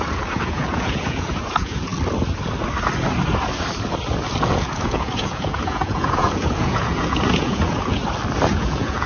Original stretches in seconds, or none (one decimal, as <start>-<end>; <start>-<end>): 1.9-4.4; 8.0-8.5